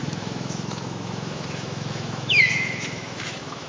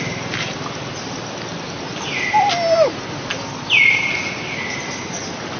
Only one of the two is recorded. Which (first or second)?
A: second